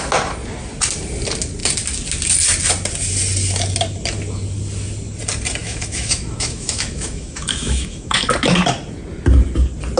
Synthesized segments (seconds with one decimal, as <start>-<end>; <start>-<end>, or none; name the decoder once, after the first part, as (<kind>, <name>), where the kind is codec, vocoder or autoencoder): 5.6-8.3 (autoencoder, DAC-VAE)